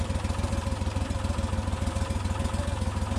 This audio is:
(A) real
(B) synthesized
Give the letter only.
A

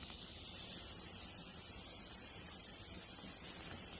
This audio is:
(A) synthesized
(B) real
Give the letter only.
B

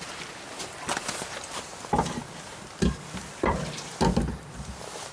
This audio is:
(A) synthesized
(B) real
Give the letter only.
A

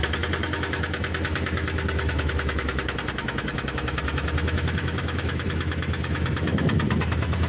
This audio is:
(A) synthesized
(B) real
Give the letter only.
A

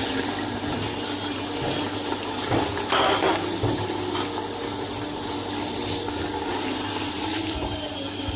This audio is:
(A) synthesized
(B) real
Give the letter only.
B